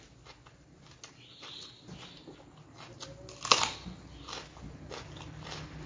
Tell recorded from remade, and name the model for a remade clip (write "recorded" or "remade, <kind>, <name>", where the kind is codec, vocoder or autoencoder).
recorded